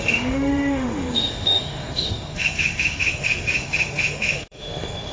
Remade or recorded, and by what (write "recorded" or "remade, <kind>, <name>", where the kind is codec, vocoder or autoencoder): remade, autoencoder, DAC-VAE